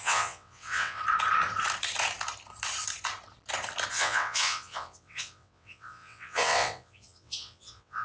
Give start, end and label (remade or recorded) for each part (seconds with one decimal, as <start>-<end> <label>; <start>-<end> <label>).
0.0-1.0 remade; 1.0-3.9 recorded; 3.9-8.0 remade